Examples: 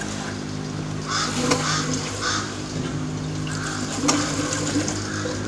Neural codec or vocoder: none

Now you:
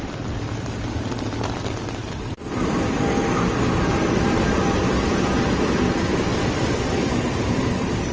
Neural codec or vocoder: vocoder, BigVGAN v2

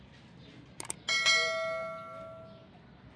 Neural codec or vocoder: none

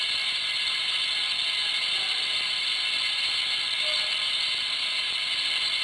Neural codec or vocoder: none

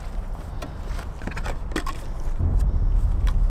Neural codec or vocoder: none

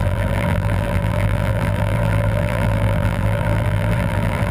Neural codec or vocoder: vocoder, BigVGAN v2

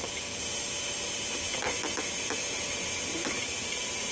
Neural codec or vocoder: none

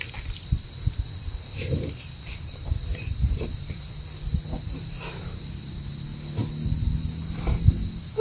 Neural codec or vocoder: none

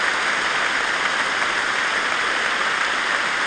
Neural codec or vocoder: none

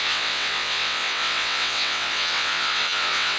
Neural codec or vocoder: vocoder, WaveNeXt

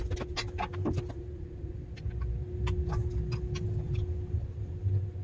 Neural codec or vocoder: none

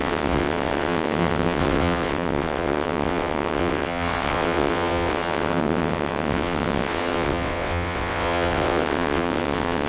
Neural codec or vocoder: vocoder, WaveNeXt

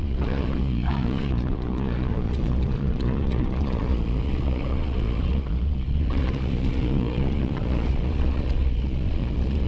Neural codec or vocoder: vocoder, Vocos